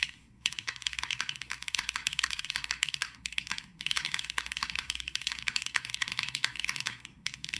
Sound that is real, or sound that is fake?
fake